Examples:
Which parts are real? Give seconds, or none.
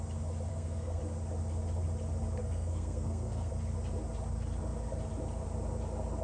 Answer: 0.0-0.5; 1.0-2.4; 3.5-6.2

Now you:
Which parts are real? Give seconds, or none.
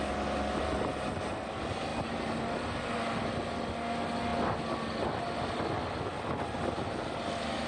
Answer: 0.0-7.7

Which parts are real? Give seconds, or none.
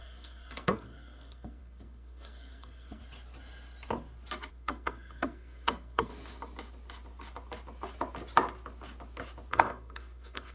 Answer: 3.0-4.5; 6.1-9.5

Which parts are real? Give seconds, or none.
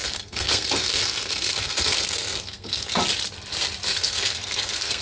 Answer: 3.0-3.9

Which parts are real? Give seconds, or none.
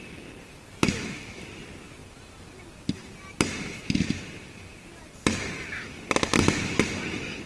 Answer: 0.0-7.5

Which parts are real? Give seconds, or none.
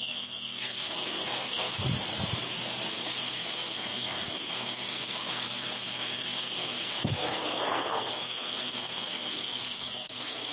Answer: 1.8-2.9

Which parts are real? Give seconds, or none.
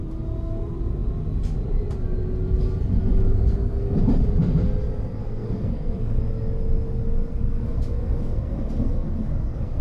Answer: 0.0-3.2; 4.0-5.2; 6.2-7.3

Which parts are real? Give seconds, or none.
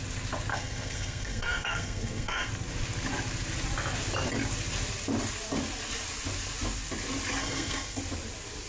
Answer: 0.0-0.5; 2.5-7.4; 8.0-8.7